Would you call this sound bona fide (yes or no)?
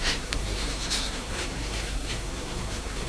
no